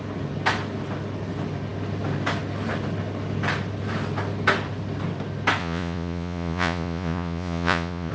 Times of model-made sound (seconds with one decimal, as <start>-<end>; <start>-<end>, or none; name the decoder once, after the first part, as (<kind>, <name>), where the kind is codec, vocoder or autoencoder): 5.6-8.1 (vocoder, Vocos)